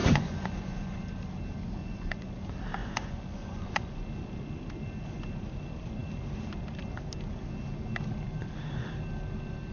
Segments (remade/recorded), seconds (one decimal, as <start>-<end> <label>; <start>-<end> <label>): 0.0-1.0 remade; 1.0-1.8 recorded; 1.8-2.3 remade; 2.3-2.8 recorded; 2.8-4.0 remade; 4.0-9.7 recorded

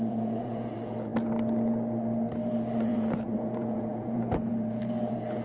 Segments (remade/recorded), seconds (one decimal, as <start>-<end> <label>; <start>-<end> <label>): 0.0-1.1 remade; 1.1-2.7 recorded; 2.7-5.4 remade

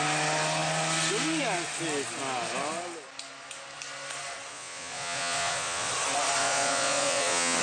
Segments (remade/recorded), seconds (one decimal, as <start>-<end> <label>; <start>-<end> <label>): 0.0-4.5 recorded; 4.5-5.9 remade; 5.9-6.4 recorded; 6.4-7.6 remade

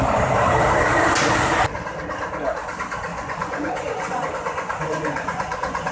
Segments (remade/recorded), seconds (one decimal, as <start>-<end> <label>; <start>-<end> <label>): 0.0-3.1 recorded; 3.1-5.9 remade

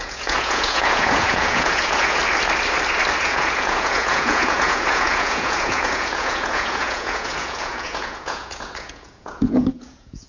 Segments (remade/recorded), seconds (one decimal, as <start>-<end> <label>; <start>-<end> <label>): 0.0-2.2 remade; 2.2-3.2 recorded; 3.2-10.3 remade